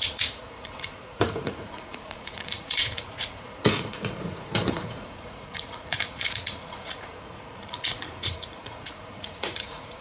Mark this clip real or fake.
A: fake